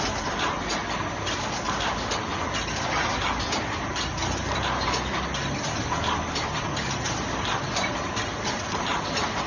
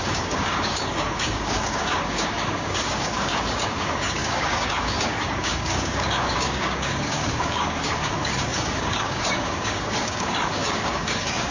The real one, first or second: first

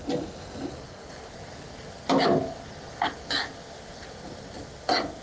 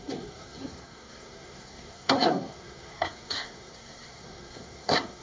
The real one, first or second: first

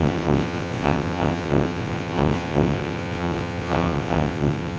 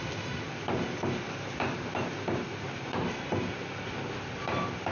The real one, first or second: second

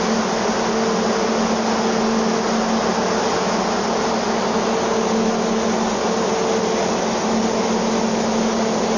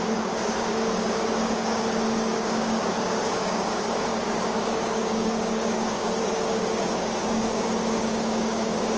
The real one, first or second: first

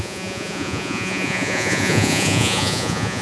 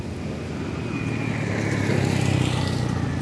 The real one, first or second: second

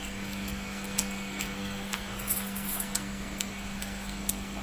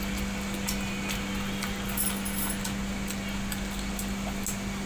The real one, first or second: second